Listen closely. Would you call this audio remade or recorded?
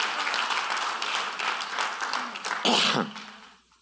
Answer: recorded